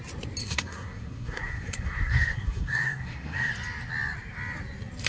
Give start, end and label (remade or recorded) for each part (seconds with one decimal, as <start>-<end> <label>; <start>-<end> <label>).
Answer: 0.0-0.4 recorded; 0.4-3.5 remade; 3.5-5.1 recorded